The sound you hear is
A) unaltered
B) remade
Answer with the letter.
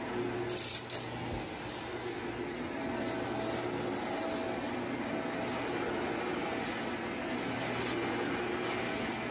A